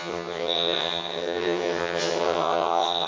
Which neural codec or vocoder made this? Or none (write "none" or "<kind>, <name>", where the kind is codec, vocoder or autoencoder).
vocoder, HiFi-GAN